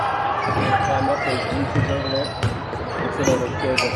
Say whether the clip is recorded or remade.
remade